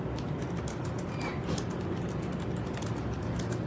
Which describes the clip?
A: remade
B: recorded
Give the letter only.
B